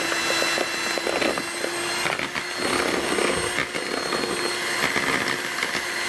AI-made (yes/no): no